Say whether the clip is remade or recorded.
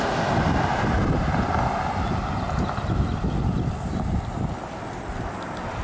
recorded